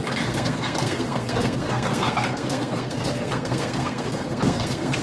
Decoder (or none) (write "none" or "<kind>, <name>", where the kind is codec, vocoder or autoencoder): codec, SNAC